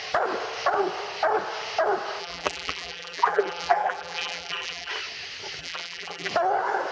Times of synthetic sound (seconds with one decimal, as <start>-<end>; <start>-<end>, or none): 2.2-4.9; 5.6-6.3